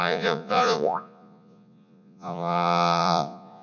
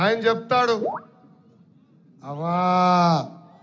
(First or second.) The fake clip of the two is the first